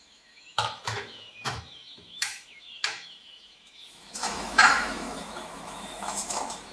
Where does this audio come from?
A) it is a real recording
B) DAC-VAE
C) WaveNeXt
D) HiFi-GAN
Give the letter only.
B